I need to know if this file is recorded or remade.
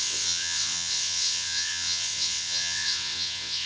remade